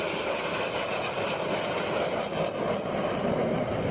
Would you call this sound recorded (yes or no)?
yes